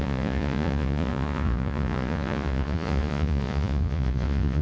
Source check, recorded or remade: remade